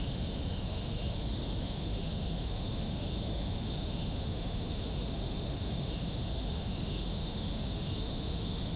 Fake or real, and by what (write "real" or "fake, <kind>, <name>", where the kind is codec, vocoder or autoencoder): fake, autoencoder, DAC-VAE